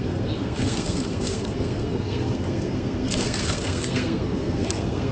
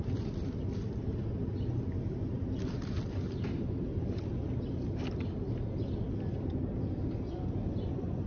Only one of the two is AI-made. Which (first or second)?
first